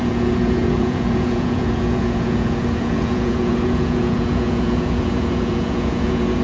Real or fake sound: fake